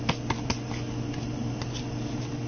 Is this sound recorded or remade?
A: recorded